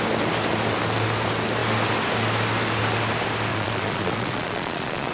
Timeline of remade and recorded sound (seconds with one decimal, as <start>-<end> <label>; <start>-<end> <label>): 0.0-3.5 recorded; 3.5-5.1 remade

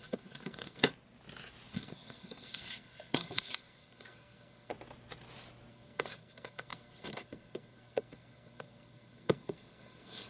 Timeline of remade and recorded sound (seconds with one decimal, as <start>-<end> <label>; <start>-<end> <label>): 0.0-0.9 remade; 0.9-1.7 recorded; 1.7-4.7 remade; 4.7-5.7 recorded; 5.7-10.3 remade